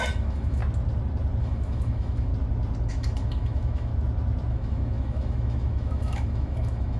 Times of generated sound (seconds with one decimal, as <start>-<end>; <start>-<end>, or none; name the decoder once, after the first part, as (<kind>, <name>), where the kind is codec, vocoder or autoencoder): 0.0-0.6 (autoencoder, DAC-VAE); 1.4-2.3; 2.9-3.9; 4.5-7.0